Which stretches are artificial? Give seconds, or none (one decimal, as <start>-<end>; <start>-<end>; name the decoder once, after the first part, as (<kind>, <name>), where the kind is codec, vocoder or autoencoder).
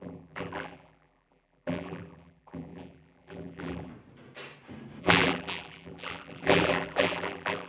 0.0-3.9 (vocoder, BigVGAN v2); 5.0-7.7